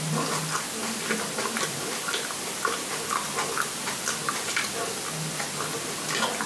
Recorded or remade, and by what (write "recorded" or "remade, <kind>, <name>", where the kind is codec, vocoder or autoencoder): recorded